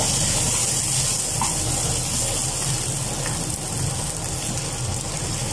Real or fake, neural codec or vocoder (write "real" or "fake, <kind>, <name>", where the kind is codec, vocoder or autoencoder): real